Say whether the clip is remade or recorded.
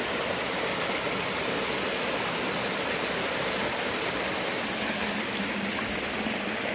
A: recorded